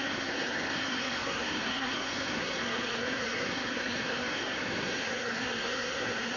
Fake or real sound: fake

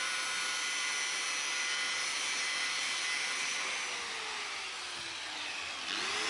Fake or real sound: real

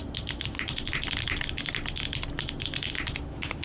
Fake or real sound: real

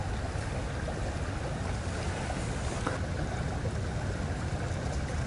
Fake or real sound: real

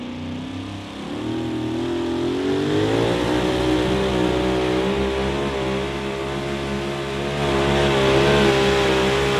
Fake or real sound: real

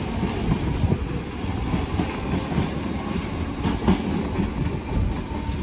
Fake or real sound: real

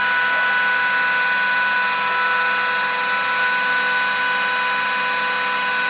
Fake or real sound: real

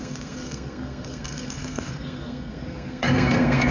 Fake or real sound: fake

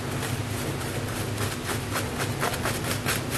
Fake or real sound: real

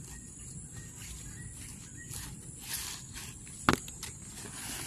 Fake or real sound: real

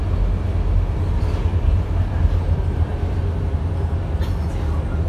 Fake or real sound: real